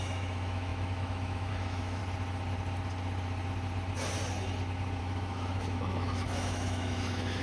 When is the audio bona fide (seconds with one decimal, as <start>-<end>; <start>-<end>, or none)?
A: 2.0-5.0